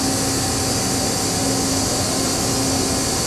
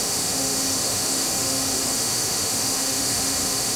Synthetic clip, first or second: second